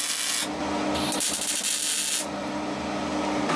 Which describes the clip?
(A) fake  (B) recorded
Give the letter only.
B